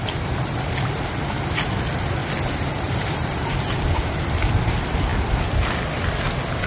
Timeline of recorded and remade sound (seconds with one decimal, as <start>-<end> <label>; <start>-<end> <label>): 0.0-2.2 remade; 2.2-2.7 recorded; 2.7-5.1 remade; 5.1-6.7 recorded